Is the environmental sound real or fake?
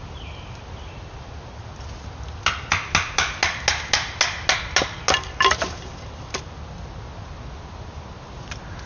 real